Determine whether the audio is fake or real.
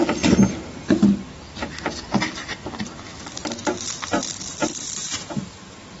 real